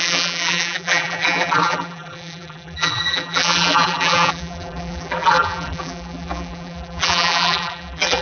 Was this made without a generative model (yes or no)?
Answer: no